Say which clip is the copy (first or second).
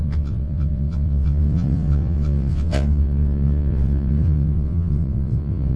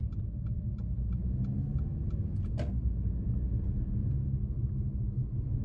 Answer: first